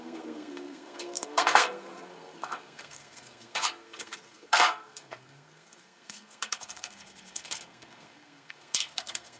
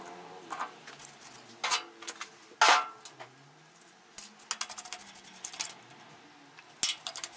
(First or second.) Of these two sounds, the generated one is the first